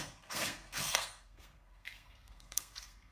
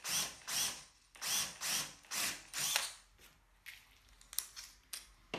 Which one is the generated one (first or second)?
first